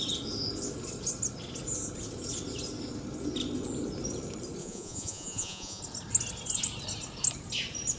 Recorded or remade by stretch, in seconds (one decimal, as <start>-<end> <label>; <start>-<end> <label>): 0.0-4.6 recorded; 4.6-5.8 remade; 5.8-8.0 recorded